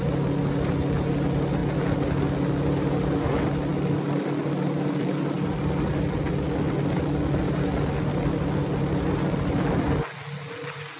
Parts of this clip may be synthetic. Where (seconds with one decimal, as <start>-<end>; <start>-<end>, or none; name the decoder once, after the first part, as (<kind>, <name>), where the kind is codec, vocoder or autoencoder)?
none